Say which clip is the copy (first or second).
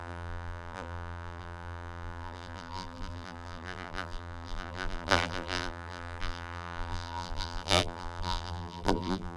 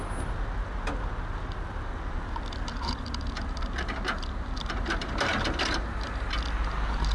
first